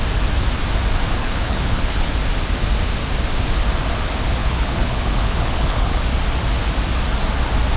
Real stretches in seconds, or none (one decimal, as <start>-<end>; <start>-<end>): 0.0-1.2; 2.1-4.4; 6.0-7.8

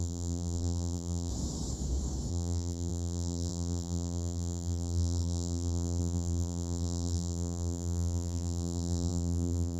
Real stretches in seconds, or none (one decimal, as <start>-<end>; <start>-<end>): 1.3-2.3

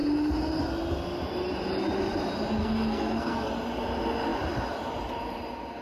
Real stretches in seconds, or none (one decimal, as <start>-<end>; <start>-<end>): 0.0-2.6; 3.5-5.8

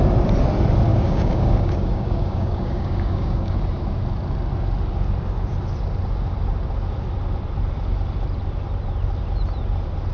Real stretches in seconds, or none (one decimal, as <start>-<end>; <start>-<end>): 0.0-0.9; 3.5-10.1

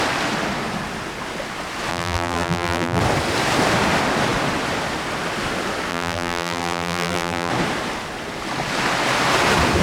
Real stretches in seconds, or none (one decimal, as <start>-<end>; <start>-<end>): 0.0-1.9; 3.0-5.9; 7.5-9.8

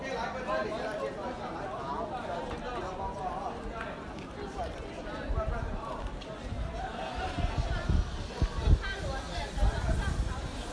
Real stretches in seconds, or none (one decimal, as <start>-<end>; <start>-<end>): 0.0-10.7